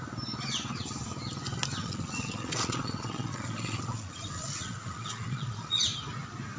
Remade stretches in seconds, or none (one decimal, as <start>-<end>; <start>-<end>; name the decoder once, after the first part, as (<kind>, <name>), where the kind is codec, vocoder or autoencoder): 1.8-5.8 (vocoder, Vocos)

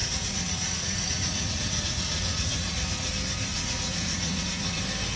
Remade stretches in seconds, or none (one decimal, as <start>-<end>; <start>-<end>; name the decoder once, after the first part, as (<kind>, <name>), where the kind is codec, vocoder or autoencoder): 0.0-3.1 (vocoder, Vocos); 3.5-4.8

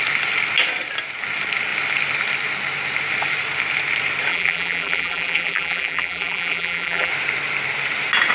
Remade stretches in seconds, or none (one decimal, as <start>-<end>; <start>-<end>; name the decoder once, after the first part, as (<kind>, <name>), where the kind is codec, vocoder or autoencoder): 4.3-7.1 (vocoder, BigVGAN v2)

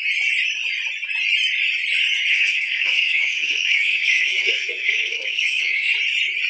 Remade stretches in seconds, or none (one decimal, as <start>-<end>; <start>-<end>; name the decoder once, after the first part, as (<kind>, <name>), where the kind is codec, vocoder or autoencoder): 2.3-5.9 (codec, SNAC)

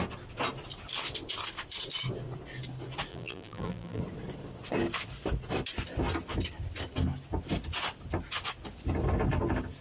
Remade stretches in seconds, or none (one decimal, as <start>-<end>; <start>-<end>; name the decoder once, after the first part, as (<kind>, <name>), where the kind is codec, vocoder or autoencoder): 3.1-4.0 (vocoder, BigVGAN v2)